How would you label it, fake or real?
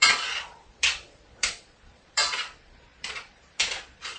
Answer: fake